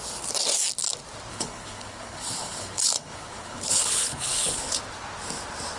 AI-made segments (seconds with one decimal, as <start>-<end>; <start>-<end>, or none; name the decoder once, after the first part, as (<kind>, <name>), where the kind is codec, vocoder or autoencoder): 1.3-4.8 (codec, HILCodec)